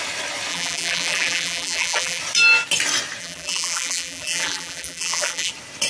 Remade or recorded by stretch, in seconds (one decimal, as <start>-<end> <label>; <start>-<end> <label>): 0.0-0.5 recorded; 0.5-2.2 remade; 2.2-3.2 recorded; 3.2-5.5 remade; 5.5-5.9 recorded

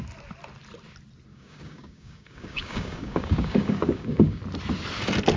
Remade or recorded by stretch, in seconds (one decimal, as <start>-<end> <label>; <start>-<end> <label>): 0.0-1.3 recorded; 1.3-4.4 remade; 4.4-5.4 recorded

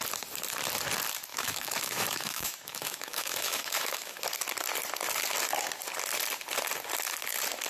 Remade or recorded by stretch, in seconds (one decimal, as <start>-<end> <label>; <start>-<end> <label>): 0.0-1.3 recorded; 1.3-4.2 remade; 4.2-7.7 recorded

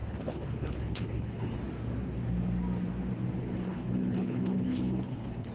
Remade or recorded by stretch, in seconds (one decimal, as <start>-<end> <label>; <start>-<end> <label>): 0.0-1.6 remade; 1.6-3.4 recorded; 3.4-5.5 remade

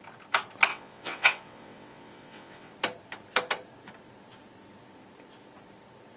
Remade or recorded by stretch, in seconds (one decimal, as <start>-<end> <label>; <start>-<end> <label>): 0.0-0.7 recorded; 0.7-2.7 remade; 2.7-6.2 recorded